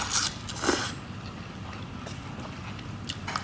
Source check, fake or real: real